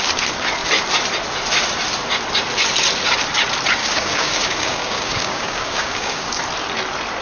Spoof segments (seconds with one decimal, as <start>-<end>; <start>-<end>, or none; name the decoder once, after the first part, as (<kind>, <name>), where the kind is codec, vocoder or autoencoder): 3.8-6.4 (codec, DAC)